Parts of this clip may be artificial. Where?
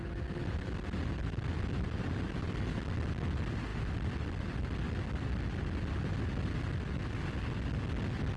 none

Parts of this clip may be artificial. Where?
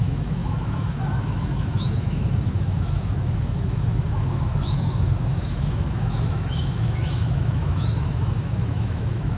0.0-9.4 (autoencoder, DAC-VAE)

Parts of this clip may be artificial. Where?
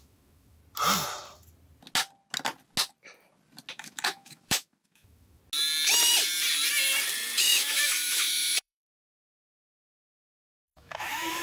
0.0-0.6 (autoencoder, DAC-VAE); 3.7-5.4; 7.4-11.4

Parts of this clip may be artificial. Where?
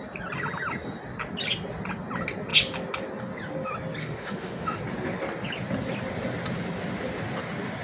4.0-4.8 (autoencoder, DAC-VAE)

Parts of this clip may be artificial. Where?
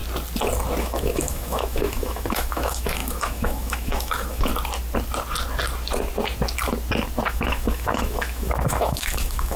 0.8-4.5 (autoencoder, DAC-VAE); 7.3-9.6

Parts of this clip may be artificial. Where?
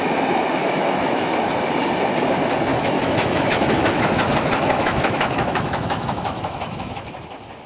0.6-1.2 (autoencoder, DAC-VAE); 2.7-7.0